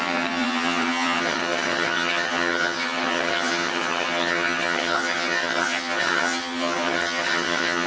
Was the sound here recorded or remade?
remade